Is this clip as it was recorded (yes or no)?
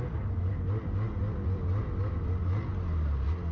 yes